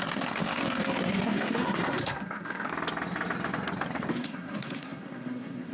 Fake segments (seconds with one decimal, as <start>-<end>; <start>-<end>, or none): 0.0-2.7; 4.1-5.7